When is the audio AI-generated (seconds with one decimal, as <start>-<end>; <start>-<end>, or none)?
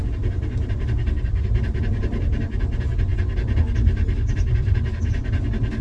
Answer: none